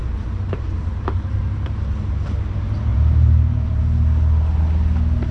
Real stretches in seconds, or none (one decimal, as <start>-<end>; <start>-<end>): 1.4-2.9; 3.8-5.3